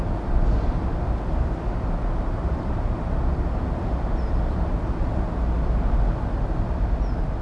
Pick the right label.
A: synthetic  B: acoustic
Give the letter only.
B